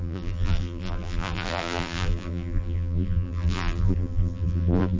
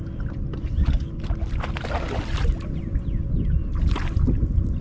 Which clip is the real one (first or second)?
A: second